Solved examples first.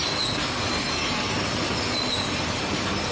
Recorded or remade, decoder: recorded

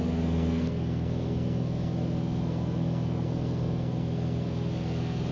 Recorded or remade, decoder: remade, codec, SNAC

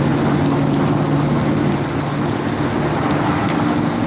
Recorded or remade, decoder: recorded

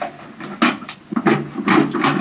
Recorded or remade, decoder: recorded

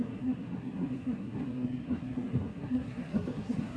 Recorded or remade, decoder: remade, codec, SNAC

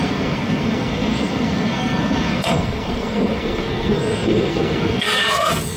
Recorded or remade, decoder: remade, codec, SNAC